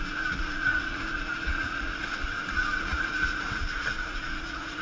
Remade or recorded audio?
remade